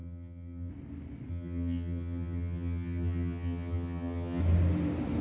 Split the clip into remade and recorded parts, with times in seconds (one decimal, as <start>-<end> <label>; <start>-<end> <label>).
0.0-0.7 remade; 0.7-1.3 recorded; 1.3-4.4 remade; 4.4-5.2 recorded